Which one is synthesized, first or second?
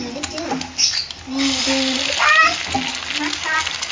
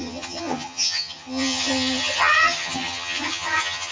second